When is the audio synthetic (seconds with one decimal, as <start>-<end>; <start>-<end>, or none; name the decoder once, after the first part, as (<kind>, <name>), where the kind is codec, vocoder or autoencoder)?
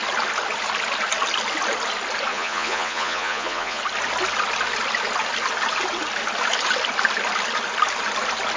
2.3-3.8 (vocoder, Vocos)